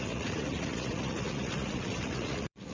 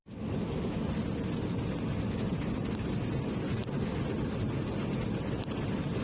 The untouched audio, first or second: second